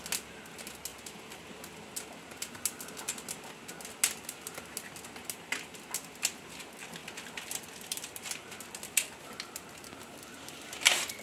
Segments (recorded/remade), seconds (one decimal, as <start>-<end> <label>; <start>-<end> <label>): 0.0-0.9 recorded; 0.9-1.5 remade; 1.5-7.0 recorded; 7.0-8.6 remade; 8.6-11.2 recorded